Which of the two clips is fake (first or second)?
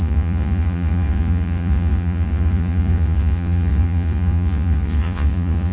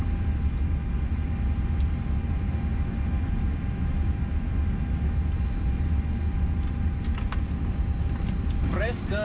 first